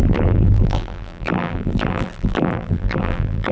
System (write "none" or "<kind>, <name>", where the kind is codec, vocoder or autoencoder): vocoder, BigVGAN v2